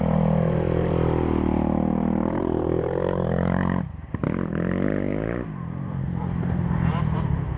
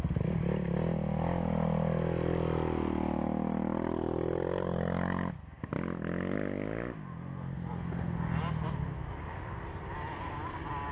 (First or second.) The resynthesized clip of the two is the first